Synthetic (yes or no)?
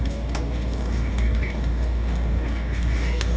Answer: yes